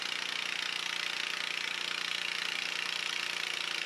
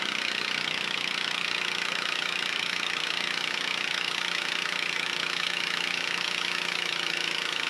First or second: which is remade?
second